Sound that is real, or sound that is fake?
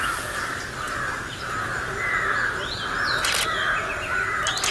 real